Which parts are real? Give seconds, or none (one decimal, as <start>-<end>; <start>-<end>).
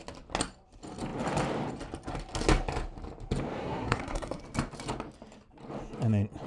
0.0-3.6; 4.4-6.5